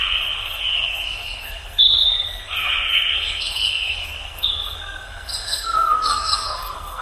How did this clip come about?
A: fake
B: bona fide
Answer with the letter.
A